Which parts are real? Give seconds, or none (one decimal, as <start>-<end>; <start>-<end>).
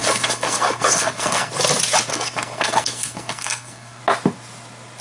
1.5-2.1; 4.0-5.0